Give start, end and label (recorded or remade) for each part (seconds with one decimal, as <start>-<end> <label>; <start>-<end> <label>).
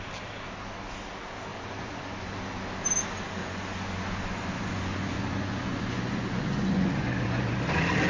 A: 0.0-1.5 recorded; 1.5-2.3 remade; 2.3-3.4 recorded; 3.4-7.6 remade; 7.6-8.1 recorded